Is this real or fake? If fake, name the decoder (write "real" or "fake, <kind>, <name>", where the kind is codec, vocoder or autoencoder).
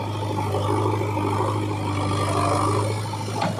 real